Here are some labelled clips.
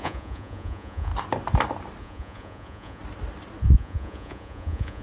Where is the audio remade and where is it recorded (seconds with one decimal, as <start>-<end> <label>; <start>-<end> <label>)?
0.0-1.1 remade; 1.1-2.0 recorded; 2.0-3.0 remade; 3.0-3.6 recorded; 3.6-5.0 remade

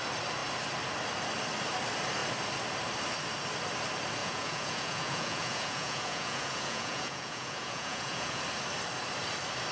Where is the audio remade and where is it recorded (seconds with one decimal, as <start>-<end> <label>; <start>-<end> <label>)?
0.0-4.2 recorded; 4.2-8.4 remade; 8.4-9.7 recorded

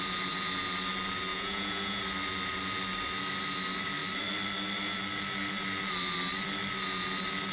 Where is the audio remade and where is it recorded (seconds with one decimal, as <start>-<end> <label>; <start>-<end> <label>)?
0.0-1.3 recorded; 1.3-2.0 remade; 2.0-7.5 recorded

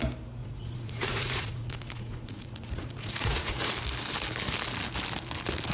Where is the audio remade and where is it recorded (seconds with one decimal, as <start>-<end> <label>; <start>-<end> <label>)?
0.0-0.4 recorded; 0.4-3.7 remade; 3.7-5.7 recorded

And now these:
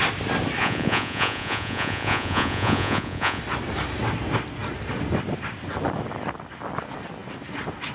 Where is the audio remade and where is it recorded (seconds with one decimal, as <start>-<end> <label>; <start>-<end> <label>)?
0.0-0.6 recorded; 0.6-3.4 remade; 3.4-7.9 recorded

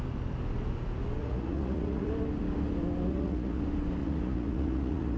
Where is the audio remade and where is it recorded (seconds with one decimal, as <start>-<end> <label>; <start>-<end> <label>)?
0.0-1.2 recorded; 1.2-2.1 remade; 2.1-3.1 recorded; 3.1-3.6 remade; 3.6-4.0 recorded; 4.0-5.2 remade

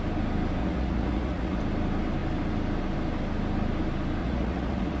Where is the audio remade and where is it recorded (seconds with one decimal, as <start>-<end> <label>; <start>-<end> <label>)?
0.0-0.6 recorded; 0.6-1.6 remade; 1.6-4.2 recorded; 4.2-5.0 remade